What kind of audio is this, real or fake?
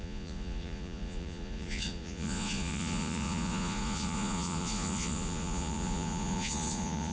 fake